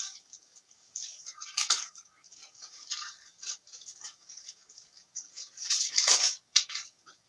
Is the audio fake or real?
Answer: fake